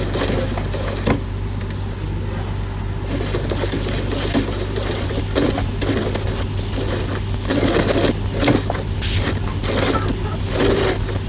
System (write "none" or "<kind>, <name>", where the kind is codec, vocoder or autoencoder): none